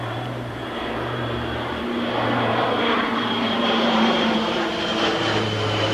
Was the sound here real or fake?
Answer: fake